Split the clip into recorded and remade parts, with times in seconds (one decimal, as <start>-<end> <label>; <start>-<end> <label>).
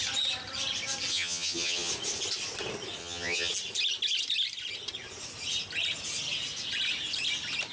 0.0-1.1 recorded; 1.1-1.9 remade; 1.9-3.0 recorded; 3.0-3.5 remade; 3.5-7.7 recorded